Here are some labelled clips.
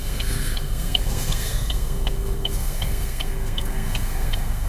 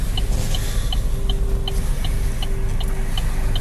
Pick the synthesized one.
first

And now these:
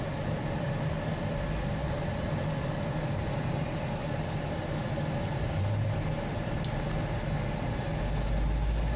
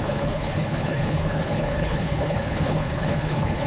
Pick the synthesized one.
second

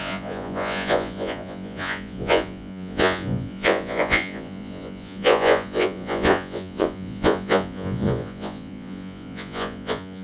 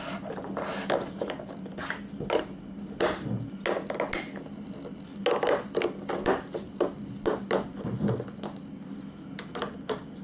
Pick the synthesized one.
first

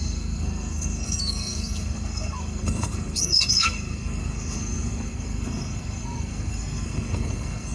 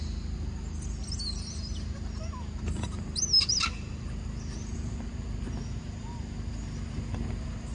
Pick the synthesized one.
first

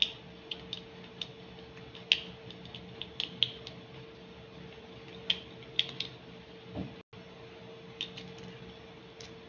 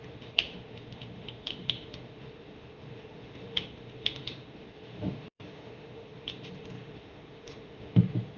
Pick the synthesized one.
second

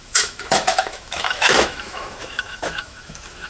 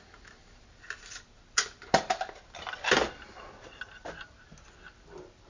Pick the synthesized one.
first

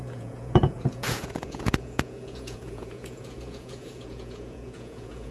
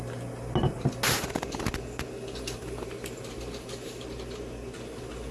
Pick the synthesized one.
first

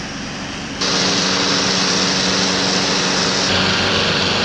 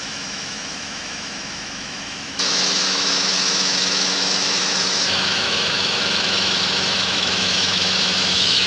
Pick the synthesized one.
second